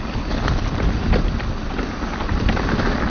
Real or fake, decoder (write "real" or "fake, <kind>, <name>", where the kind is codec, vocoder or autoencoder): real